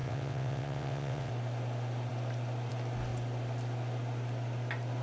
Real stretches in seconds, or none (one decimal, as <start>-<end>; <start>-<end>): 1.3-5.0